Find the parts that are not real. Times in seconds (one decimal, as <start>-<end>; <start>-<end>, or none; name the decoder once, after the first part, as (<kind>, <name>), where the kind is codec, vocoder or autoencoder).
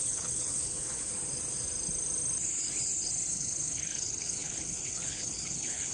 0.0-1.1 (codec, HILCodec); 3.3-5.9